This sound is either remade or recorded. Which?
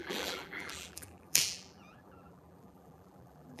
remade